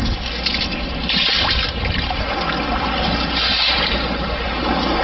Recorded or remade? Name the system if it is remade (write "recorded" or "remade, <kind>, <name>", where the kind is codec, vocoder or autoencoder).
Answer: recorded